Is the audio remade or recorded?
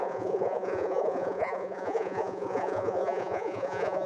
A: remade